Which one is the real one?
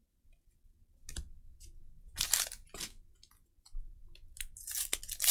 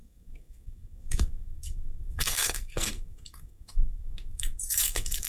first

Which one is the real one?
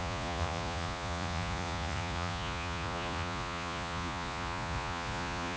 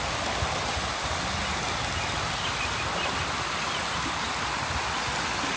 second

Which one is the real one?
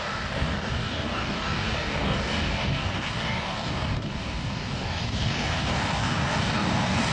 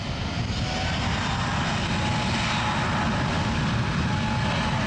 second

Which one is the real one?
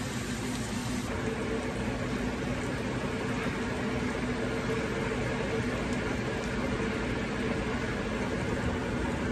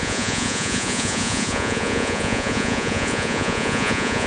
first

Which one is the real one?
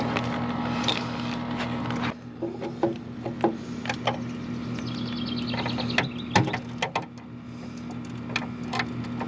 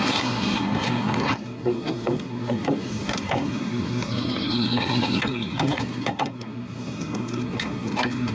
first